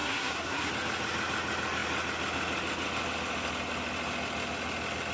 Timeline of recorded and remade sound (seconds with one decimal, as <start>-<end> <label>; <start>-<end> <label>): 0.0-0.7 remade; 0.7-5.1 recorded